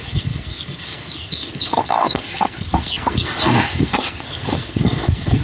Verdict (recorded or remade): remade